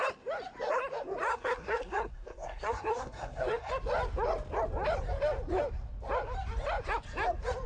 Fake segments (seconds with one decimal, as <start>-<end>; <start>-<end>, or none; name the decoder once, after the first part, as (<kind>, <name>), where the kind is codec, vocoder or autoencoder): 1.3-3.7 (codec, SNAC)